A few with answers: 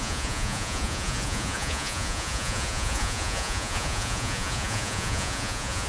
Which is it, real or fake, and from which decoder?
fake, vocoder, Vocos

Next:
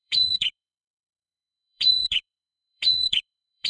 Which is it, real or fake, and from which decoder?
fake, vocoder, Vocos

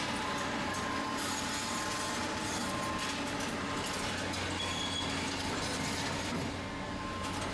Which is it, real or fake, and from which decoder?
real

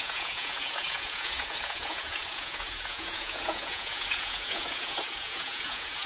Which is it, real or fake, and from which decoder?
fake, vocoder, Vocos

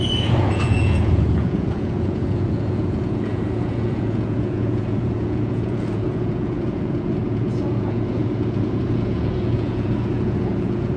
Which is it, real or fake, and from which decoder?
fake, vocoder, Vocos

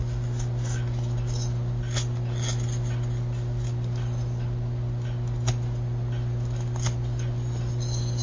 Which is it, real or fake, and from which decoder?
real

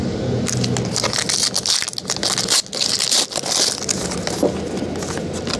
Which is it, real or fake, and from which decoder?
real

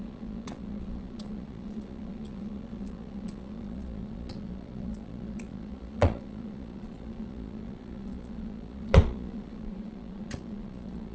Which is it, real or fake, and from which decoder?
fake, vocoder, Vocos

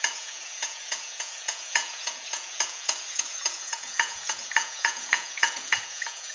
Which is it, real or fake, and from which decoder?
fake, vocoder, Vocos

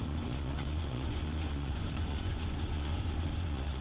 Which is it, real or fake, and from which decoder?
fake, vocoder, Vocos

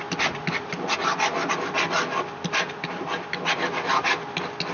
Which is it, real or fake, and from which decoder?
real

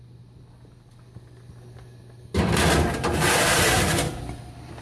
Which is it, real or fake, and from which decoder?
real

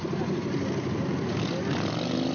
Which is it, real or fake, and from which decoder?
real